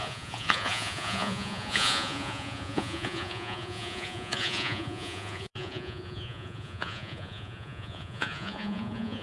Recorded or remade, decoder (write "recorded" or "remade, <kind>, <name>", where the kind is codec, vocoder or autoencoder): remade, vocoder, Vocos